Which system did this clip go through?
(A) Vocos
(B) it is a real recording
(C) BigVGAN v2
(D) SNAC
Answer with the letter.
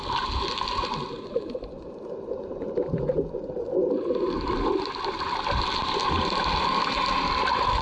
B